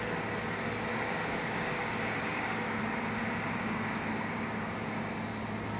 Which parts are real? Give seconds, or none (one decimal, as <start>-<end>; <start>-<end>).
0.0-0.9; 2.8-3.6; 5.1-5.8